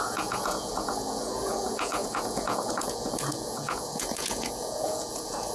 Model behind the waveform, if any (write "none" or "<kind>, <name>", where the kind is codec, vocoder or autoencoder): vocoder, Vocos